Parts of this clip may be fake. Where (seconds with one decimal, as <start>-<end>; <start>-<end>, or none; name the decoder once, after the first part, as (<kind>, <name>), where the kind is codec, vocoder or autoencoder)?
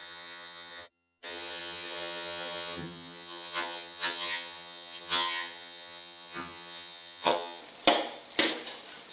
0.0-7.6 (vocoder, HiFi-GAN)